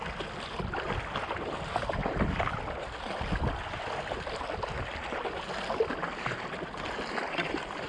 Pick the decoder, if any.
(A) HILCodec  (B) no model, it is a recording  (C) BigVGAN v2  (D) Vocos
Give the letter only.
B